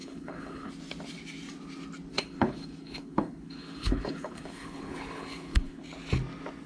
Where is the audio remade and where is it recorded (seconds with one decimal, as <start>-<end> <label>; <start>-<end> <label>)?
0.0-0.7 remade; 0.7-2.1 recorded; 2.1-5.8 remade; 5.8-6.7 recorded